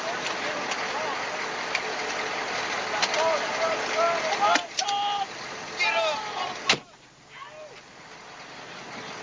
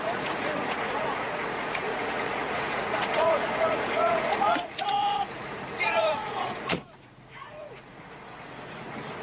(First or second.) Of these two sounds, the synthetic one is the second